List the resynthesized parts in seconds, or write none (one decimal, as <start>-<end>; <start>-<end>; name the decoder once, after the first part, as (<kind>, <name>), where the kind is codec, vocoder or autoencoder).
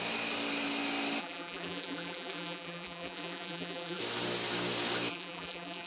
1.2-4.0 (vocoder, BigVGAN v2); 5.1-5.9